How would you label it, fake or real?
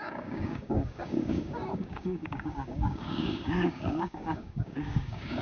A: fake